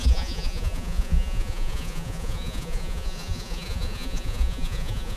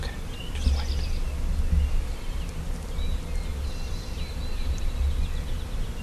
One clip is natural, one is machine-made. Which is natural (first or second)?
second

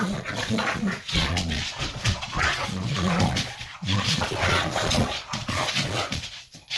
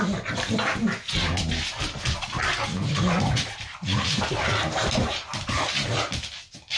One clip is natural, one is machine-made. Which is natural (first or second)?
second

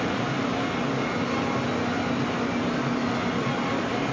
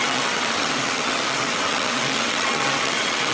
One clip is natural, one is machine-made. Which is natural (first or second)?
first